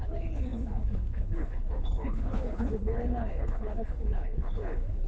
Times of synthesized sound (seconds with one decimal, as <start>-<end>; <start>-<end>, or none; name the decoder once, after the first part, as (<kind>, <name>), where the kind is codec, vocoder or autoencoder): 0.0-5.1 (codec, HILCodec)